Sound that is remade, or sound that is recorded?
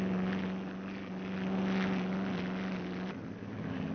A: recorded